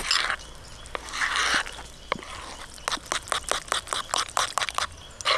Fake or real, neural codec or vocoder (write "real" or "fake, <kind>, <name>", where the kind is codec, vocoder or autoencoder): real